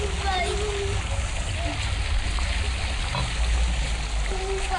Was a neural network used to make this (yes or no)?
no